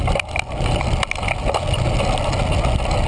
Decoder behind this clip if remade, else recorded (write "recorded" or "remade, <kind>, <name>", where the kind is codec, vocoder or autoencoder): recorded